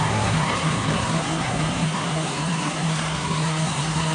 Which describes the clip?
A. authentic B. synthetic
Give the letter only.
B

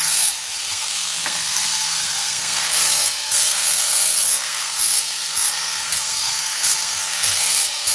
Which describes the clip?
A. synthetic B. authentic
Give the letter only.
A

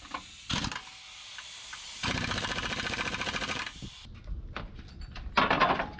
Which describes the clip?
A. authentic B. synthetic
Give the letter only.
A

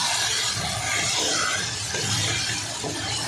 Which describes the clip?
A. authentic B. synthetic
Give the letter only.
A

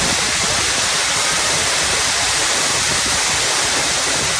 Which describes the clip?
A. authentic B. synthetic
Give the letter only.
A